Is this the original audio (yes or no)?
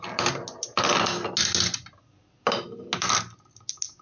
yes